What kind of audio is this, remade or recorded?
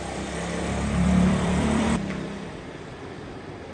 remade